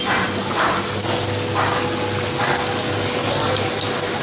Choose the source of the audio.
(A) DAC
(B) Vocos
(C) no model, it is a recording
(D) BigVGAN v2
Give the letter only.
C